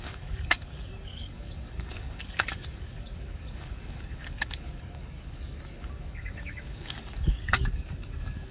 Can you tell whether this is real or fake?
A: fake